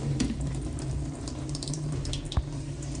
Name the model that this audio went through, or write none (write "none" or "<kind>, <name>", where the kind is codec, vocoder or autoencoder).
vocoder, BigVGAN v2